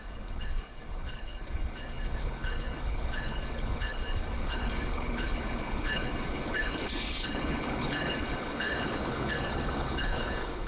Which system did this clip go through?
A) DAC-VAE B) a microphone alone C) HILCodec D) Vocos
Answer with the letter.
C